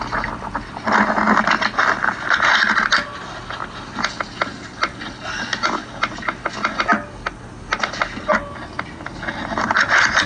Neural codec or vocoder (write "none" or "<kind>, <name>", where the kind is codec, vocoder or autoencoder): none